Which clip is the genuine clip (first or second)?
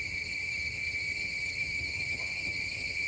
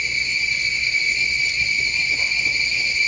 second